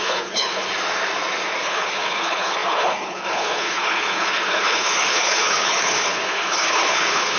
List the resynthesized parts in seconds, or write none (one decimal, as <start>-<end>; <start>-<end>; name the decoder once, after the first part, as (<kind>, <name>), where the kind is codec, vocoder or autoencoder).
0.0-0.6 (codec, HILCodec); 1.6-7.4

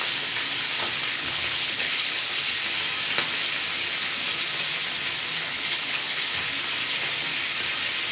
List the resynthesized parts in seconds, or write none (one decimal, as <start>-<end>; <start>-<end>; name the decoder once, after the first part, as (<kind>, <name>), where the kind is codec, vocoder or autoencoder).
1.1-2.6 (codec, HILCodec); 5.3-6.2

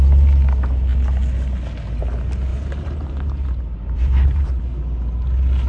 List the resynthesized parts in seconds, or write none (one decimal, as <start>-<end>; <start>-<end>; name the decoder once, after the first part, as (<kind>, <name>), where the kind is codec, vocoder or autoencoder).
2.5-4.6 (vocoder, BigVGAN v2)

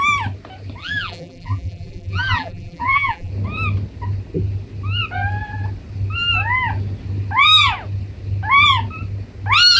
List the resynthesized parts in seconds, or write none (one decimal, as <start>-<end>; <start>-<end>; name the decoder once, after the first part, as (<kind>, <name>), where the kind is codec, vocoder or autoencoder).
0.8-3.3 (vocoder, BigVGAN v2)

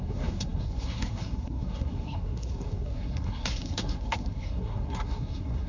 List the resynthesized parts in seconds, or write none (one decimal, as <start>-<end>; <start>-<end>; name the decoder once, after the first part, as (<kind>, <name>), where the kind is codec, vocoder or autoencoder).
0.0-5.7 (codec, SNAC)

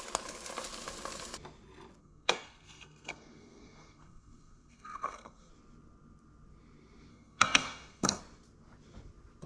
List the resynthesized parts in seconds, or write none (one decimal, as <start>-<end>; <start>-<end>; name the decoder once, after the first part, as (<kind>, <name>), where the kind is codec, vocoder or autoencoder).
2.0-5.5 (codec, SNAC); 7.1-8.2

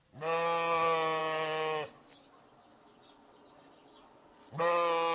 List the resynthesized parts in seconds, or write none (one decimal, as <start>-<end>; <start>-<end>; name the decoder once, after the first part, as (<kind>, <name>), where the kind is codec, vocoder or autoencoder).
none

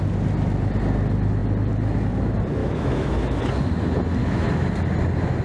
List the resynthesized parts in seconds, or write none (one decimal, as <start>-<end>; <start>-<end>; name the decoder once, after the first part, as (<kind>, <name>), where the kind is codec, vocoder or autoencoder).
2.6-3.4 (autoencoder, DAC-VAE); 4.2-4.7